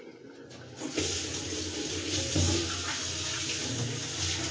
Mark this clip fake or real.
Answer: real